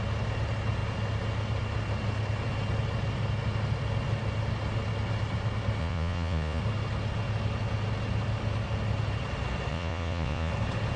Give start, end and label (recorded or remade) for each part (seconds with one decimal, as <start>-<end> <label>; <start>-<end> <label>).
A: 0.0-5.8 recorded; 5.8-6.6 remade; 6.6-9.7 recorded; 9.7-10.5 remade; 10.5-11.0 recorded